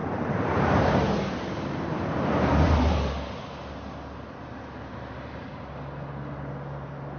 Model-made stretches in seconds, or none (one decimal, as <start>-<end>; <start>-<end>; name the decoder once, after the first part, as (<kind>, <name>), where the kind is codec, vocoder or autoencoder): 0.0-3.4 (vocoder, BigVGAN v2); 4.9-5.6